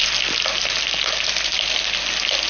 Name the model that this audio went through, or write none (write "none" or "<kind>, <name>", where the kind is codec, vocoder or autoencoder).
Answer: none